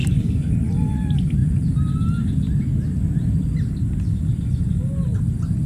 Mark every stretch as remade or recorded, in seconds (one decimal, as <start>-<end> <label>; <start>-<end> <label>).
0.0-0.5 remade; 0.5-5.7 recorded